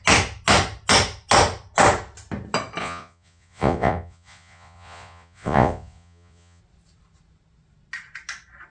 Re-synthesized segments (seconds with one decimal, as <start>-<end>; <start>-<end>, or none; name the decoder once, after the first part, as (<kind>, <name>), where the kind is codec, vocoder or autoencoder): 2.8-6.6 (vocoder, Vocos)